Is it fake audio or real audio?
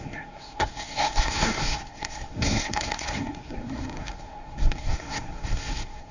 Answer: fake